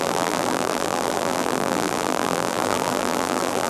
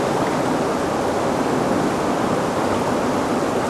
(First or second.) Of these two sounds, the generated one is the first